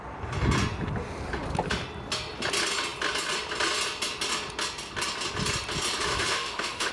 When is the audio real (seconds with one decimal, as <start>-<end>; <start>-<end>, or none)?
0.0-6.1